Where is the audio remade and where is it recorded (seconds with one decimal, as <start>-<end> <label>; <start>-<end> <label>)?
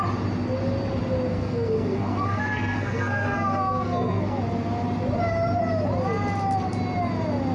0.0-1.3 recorded; 1.3-4.4 remade; 4.4-7.5 recorded